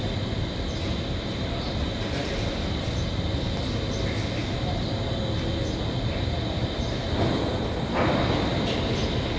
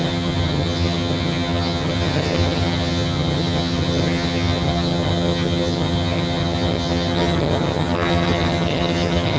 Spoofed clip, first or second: second